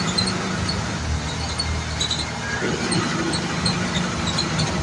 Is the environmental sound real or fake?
real